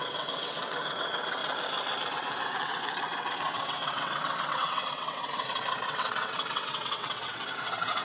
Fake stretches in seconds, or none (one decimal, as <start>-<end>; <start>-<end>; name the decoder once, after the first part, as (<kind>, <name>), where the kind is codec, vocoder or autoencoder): 0.0-1.4 (vocoder, WaveNeXt); 2.1-8.0